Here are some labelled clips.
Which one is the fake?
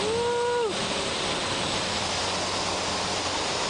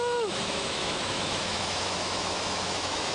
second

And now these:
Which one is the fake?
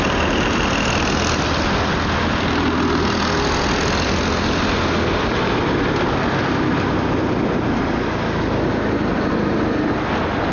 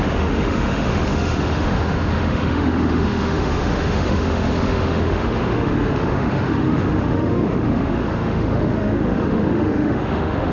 second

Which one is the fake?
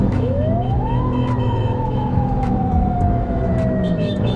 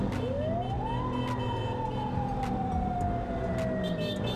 first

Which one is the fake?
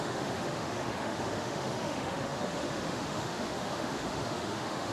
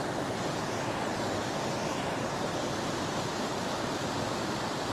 first